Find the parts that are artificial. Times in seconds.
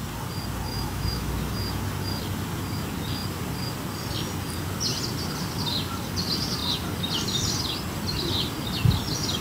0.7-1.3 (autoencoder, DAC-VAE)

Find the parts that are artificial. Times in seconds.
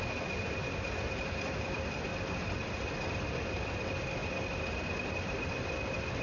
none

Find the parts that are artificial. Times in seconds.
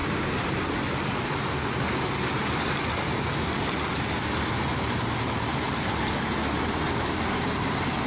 none